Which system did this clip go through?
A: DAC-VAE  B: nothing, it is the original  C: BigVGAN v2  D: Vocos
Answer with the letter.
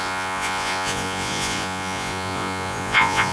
D